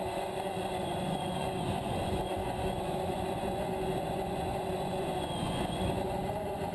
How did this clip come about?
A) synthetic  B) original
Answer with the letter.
A